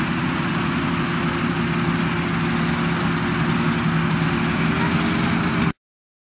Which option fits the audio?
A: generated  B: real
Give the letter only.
B